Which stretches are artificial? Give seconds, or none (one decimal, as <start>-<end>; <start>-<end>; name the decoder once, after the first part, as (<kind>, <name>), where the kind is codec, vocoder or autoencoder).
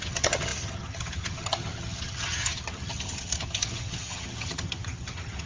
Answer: 0.0-5.5 (vocoder, HiFi-GAN)